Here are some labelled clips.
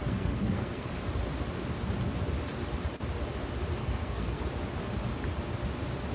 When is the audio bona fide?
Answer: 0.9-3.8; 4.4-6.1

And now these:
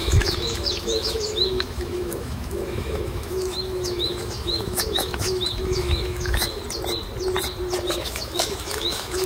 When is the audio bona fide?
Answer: 6.6-7.9

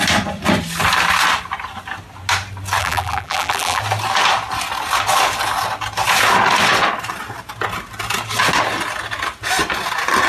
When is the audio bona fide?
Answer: 0.0-2.8; 3.8-10.3

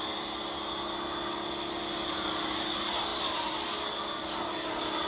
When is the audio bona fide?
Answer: 0.0-5.1

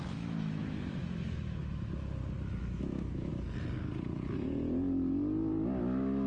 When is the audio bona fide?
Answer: 2.2-2.7; 3.3-5.8

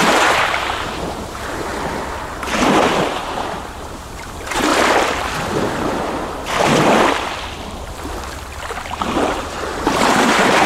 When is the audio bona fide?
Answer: 1.7-2.5; 4.7-9.0